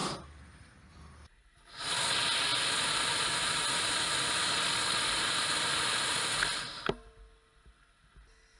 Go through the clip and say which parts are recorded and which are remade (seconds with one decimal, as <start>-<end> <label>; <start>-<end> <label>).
0.0-8.6 recorded